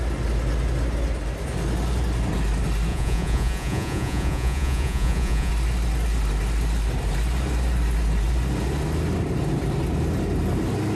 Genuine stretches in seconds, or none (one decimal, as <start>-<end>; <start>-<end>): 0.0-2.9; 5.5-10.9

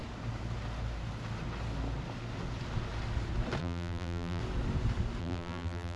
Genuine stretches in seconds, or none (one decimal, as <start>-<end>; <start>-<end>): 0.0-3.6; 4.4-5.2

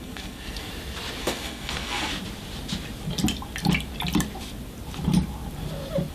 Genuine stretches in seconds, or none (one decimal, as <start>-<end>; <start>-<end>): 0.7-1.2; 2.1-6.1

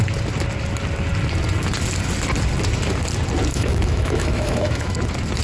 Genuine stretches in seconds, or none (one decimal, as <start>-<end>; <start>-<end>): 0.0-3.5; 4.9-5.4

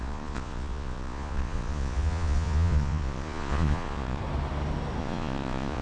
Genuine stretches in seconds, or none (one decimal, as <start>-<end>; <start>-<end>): 4.2-5.0

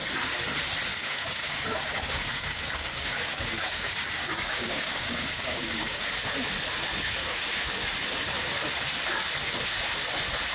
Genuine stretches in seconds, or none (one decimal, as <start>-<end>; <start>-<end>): 0.0-0.9; 6.0-10.5

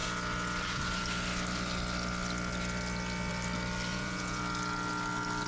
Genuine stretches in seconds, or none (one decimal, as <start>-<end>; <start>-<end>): 0.0-3.9; 4.4-5.5

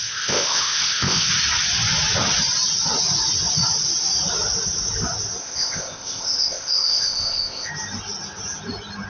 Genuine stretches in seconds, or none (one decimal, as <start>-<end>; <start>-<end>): 1.3-5.4; 7.7-9.1